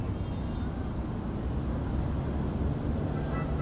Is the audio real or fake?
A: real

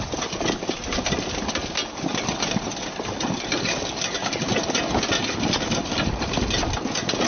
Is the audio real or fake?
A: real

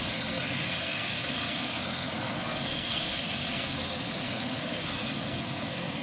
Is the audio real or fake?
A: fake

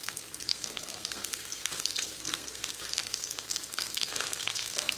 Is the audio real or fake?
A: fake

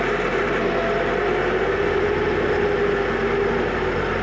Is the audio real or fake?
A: real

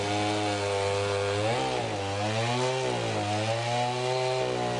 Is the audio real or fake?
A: real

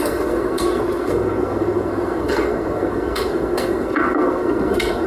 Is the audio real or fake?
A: fake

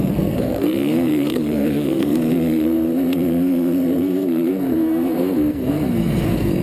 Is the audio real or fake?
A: fake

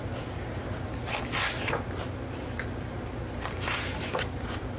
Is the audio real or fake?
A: real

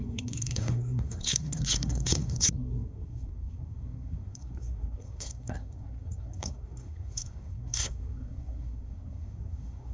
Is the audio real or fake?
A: fake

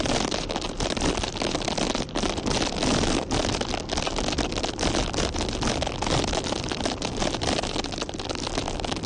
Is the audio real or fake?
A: real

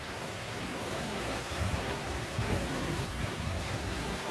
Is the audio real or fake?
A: fake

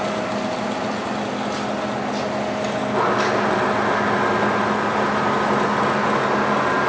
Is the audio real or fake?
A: real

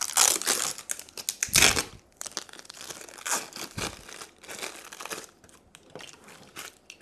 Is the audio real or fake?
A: real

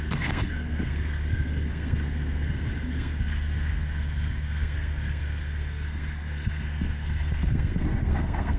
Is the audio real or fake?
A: fake